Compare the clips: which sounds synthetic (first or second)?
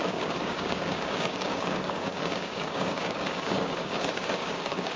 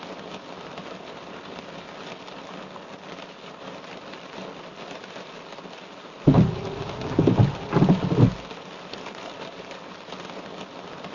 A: first